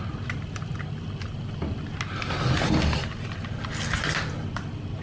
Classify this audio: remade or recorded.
recorded